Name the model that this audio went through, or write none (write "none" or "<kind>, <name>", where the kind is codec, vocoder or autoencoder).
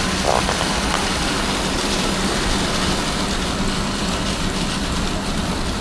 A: none